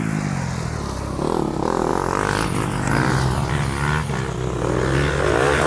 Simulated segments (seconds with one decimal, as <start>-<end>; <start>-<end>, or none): none